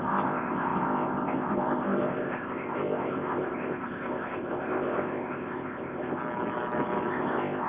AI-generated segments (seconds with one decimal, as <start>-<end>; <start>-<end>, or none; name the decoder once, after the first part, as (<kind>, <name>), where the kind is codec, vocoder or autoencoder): 0.0-6.2 (codec, ZipCodec); 7.1-7.7

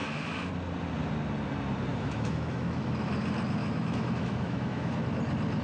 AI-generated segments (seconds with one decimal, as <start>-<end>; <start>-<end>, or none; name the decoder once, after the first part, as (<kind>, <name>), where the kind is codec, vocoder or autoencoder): 0.0-0.5 (autoencoder, DAC-VAE); 1.9-2.9; 3.6-4.9

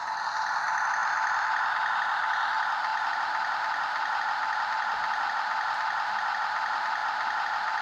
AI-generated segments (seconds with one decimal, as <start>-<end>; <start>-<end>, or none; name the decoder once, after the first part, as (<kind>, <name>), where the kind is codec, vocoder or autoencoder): none